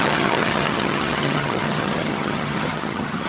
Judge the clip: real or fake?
fake